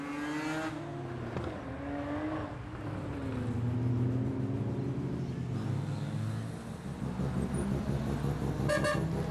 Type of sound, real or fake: real